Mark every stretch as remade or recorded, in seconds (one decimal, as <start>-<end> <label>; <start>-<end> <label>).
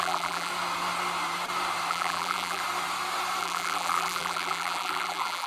0.0-0.5 remade; 0.5-1.9 recorded; 1.9-2.6 remade; 2.6-3.4 recorded; 3.4-5.5 remade